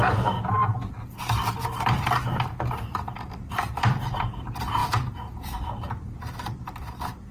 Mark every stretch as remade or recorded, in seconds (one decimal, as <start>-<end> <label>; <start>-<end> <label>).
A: 0.0-7.3 recorded